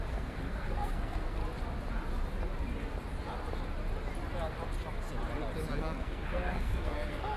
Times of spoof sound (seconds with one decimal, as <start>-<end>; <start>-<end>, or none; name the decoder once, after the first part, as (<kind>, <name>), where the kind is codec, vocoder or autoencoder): 0.0-1.4 (codec, SNAC); 5.8-7.4